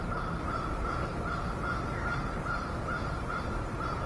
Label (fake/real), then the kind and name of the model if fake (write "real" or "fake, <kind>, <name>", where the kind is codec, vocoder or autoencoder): fake, vocoder, BigVGAN v2